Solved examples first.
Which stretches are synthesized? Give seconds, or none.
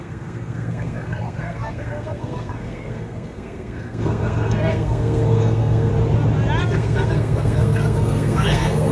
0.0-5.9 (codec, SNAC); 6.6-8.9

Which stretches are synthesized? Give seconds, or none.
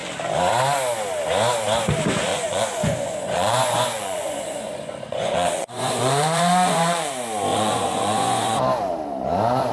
2.3-7.1 (vocoder, Vocos); 7.5-8.6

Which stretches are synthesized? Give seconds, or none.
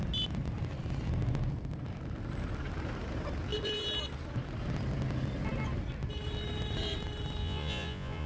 7.4-8.3 (vocoder, Vocos)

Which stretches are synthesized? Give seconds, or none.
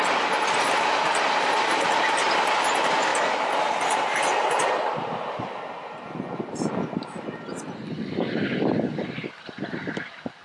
none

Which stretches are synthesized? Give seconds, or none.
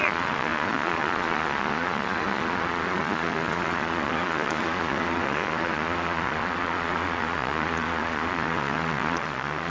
0.0-9.7 (vocoder, Vocos)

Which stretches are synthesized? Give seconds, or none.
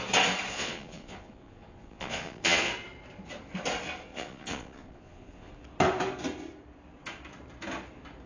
0.5-2.7 (vocoder, Vocos); 4.1-5.5